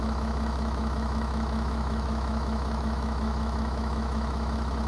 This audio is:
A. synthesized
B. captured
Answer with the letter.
A